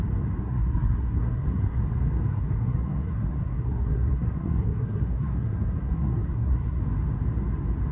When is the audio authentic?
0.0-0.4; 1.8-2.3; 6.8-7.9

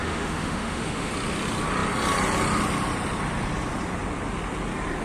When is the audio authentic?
1.1-5.0

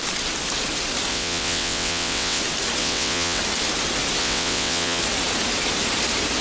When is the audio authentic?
0.0-1.1; 2.4-2.8; 3.4-4.2; 5.0-6.4